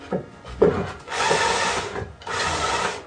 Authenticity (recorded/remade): remade